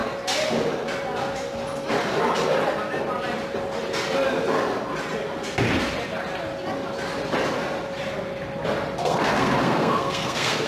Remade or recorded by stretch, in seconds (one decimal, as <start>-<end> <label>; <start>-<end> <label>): 0.0-9.0 recorded; 9.0-10.7 remade